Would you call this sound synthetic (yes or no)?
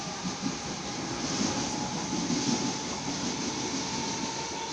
no